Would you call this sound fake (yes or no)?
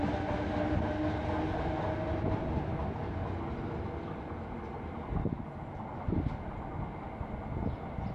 no